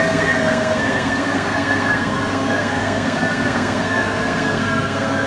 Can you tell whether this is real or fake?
fake